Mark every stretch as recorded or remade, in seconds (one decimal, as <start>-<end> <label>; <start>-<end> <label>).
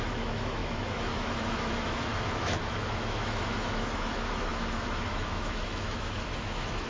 0.0-6.9 remade